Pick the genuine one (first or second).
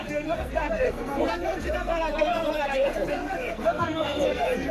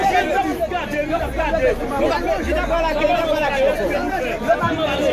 second